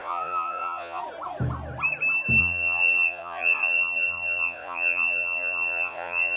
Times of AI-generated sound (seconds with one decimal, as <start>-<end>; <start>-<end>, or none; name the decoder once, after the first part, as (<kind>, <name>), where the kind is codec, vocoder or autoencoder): 0.0-1.0 (vocoder, Vocos); 2.4-6.4